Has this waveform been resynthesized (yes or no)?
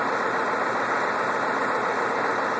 no